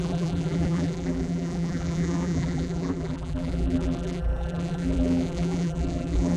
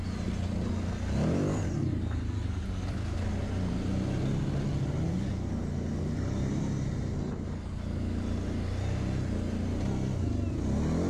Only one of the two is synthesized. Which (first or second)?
first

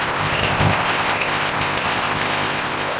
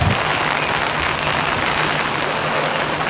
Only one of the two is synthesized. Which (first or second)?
first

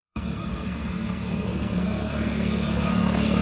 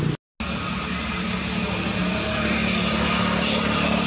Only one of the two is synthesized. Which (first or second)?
first